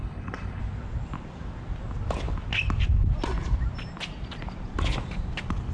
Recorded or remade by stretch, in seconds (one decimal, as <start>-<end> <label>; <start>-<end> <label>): 0.0-0.6 remade; 0.6-5.7 recorded